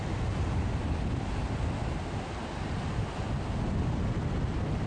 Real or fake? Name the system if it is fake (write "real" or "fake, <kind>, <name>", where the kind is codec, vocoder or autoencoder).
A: real